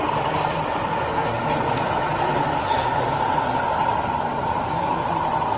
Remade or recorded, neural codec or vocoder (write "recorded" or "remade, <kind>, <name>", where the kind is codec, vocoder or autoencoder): recorded